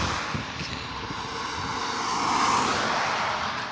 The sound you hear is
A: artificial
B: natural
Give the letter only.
B